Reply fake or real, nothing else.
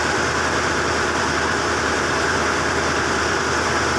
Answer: fake